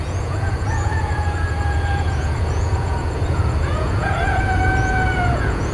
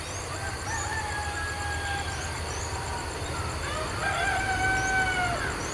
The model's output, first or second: first